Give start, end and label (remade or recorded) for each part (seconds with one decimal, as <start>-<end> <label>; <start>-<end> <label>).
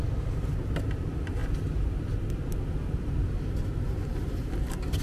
0.0-5.0 recorded